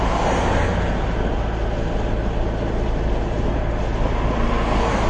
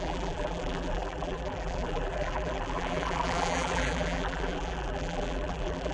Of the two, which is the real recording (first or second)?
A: first